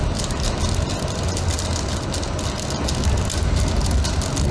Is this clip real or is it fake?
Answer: real